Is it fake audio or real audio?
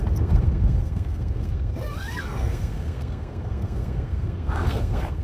fake